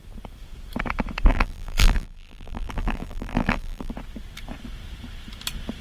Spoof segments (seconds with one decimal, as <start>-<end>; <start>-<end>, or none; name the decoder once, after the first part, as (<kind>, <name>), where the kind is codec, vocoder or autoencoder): 1.3-3.9 (vocoder, BigVGAN v2)